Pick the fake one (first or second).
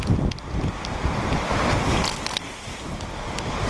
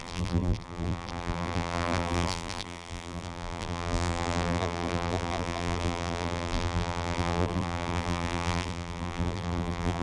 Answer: second